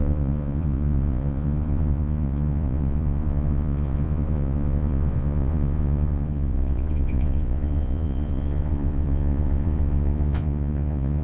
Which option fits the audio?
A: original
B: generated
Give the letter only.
B